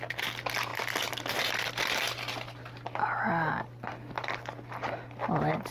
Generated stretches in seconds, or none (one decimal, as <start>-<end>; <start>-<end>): none